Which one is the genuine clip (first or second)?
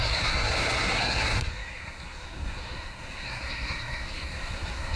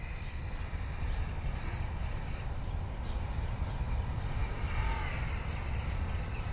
second